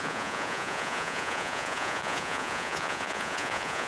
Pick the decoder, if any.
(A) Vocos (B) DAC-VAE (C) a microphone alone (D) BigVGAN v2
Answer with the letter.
A